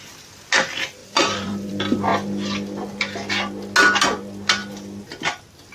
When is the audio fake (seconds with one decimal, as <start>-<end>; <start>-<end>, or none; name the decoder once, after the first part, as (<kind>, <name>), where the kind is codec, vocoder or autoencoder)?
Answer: 1.0-1.7 (vocoder, BigVGAN v2)